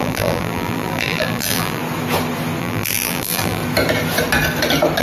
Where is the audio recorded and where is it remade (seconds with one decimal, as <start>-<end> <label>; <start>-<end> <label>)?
0.0-1.8 remade; 1.8-2.6 recorded; 2.6-3.6 remade; 3.6-5.0 recorded